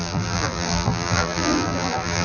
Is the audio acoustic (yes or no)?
no